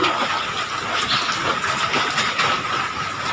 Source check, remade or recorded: recorded